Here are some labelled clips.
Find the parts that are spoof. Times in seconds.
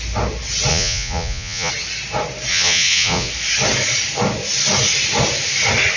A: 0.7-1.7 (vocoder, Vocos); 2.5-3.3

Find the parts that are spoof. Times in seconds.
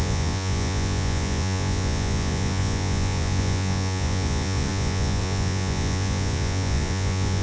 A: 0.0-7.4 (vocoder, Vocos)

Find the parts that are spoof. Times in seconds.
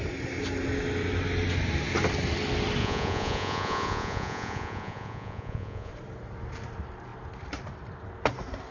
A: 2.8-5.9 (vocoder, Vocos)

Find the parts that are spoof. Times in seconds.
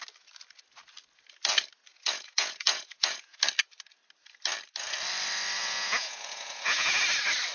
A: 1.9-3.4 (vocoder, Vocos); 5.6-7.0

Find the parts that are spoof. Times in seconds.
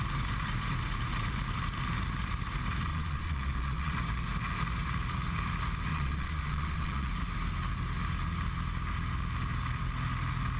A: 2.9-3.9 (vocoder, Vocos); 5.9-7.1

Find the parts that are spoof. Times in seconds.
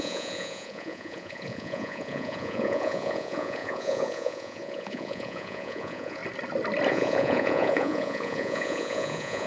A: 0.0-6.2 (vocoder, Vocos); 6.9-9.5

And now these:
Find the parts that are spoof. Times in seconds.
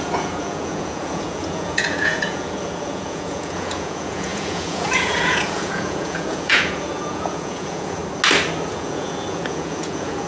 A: 0.0-8.0 (vocoder, Vocos); 8.7-10.3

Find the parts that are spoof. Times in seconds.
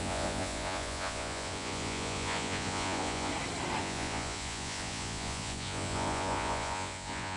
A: 0.0-3.3 (vocoder, Vocos); 3.8-7.4